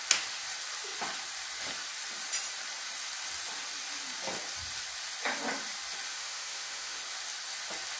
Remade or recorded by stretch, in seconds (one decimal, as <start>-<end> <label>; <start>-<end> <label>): 0.0-6.1 recorded; 6.1-7.0 remade; 7.0-8.0 recorded